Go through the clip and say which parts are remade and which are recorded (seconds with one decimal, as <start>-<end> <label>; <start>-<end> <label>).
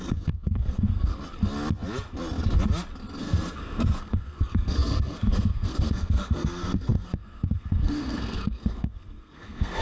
0.0-1.1 remade; 1.1-3.2 recorded; 3.2-9.8 remade